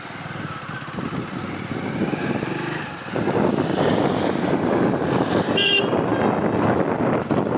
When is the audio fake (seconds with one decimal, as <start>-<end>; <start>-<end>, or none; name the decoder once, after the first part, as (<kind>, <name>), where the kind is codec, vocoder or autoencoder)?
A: none